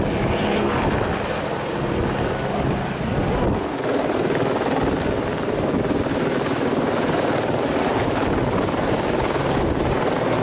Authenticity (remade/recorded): recorded